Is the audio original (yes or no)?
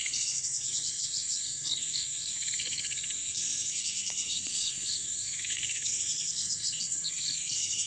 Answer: no